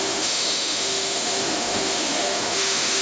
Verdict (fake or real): fake